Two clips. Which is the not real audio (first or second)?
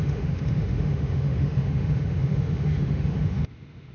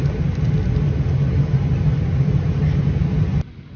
first